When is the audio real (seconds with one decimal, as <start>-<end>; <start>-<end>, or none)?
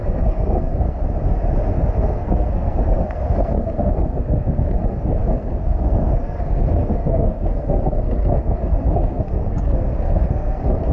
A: 1.0-1.7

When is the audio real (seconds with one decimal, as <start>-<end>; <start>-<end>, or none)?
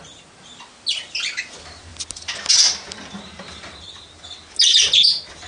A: 0.0-5.5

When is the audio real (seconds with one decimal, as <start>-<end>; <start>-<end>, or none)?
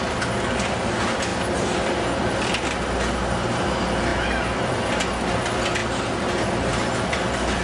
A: 0.0-7.6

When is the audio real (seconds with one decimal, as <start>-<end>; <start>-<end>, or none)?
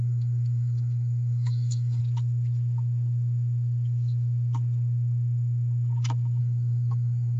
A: 2.0-6.4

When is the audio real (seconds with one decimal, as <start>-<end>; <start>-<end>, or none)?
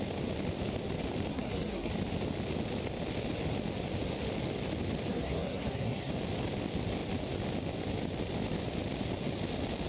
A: 0.0-1.3; 1.9-5.1; 6.1-9.9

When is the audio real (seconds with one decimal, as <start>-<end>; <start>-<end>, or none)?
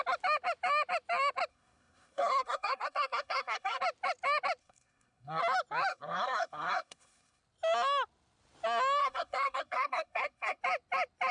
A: 0.0-1.5; 3.8-4.6; 5.4-5.9; 7.4-9.0; 10.6-11.3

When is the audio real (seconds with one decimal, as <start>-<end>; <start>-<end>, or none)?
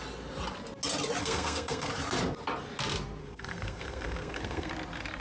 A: 0.0-1.2; 1.9-3.2; 4.7-5.2